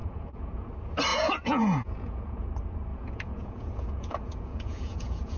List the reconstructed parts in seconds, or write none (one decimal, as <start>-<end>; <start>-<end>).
0.0-0.7; 1.1-2.5; 2.9-5.4